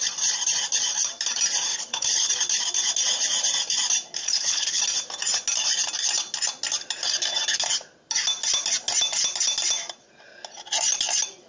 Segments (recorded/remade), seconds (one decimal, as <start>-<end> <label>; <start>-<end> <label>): 0.0-1.7 recorded; 1.7-2.3 remade; 2.3-4.2 recorded; 4.2-4.8 remade; 4.8-11.5 recorded